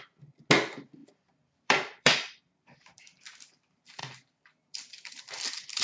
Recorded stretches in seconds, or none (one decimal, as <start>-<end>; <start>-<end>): 0.0-1.0; 3.2-5.8